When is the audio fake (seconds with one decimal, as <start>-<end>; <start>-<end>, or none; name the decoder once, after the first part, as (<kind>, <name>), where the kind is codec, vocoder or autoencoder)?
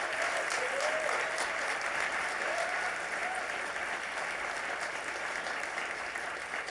none